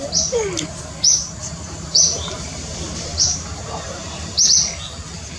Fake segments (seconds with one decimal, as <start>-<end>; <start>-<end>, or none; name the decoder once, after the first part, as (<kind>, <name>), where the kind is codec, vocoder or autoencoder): 1.4-4.4 (vocoder, BigVGAN v2)